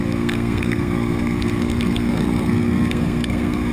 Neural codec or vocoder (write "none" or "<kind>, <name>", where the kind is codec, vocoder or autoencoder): codec, SNAC